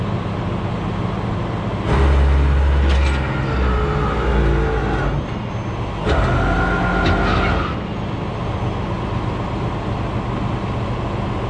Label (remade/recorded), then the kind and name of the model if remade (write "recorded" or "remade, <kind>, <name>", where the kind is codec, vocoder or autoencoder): recorded